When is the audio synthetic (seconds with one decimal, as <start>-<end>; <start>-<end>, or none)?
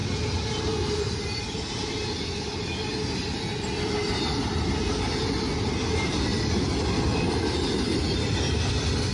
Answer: none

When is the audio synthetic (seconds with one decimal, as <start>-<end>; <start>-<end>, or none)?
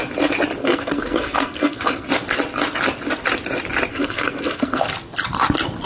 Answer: 0.6-2.1; 3.9-4.8